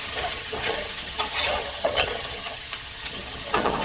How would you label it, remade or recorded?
remade